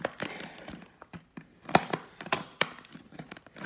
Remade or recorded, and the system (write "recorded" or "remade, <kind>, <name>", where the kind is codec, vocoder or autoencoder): recorded